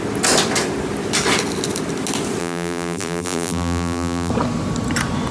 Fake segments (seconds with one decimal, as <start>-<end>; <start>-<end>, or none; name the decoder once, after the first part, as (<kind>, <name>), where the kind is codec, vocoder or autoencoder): 2.4-4.3 (vocoder, BigVGAN v2)